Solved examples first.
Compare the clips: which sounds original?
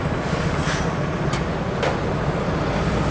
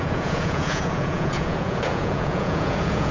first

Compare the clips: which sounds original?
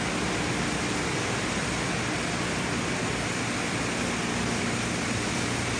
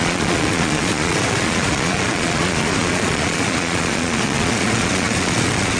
first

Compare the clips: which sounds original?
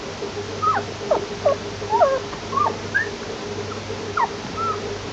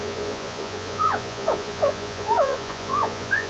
first